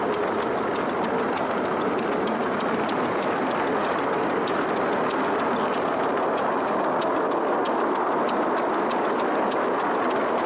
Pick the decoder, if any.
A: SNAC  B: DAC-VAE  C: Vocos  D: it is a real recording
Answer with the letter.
D